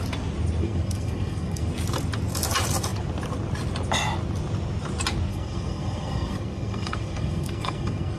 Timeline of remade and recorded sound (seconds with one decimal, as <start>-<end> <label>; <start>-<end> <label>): 0.0-0.6 recorded; 0.6-1.7 remade; 1.7-5.3 recorded; 5.3-8.2 remade